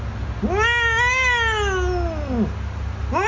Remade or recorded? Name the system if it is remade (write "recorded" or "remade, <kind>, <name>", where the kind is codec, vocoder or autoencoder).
recorded